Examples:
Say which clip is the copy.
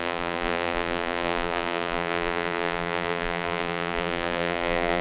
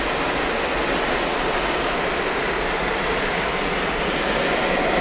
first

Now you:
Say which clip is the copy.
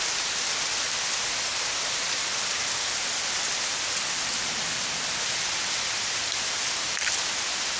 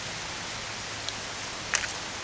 first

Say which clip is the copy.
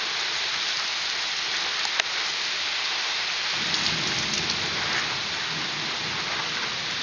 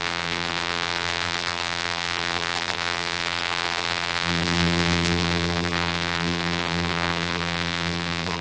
second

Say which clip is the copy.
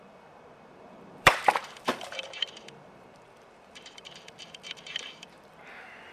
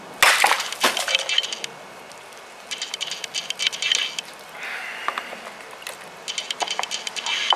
first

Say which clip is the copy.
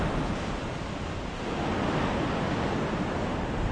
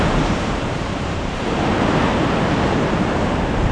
second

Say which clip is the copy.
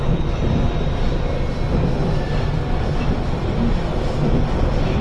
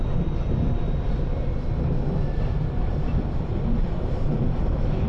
second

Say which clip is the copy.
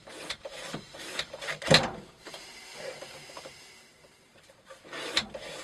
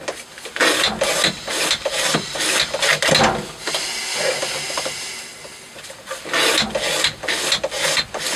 first